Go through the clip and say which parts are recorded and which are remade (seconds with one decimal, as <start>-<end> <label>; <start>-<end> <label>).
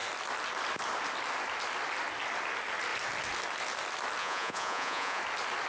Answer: 0.0-4.2 recorded; 4.2-5.2 remade; 5.2-5.7 recorded